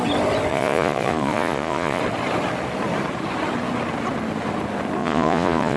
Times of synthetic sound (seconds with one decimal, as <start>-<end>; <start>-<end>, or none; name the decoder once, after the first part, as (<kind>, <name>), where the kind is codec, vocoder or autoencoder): 0.5-2.0 (vocoder, Vocos); 5.0-5.8